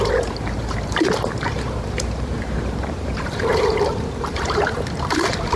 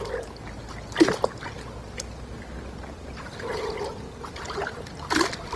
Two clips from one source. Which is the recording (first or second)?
second